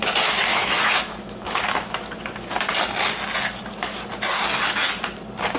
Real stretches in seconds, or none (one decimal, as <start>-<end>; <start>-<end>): 0.0-0.5; 2.0-5.6